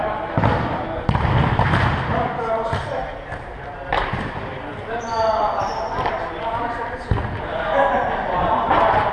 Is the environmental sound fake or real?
real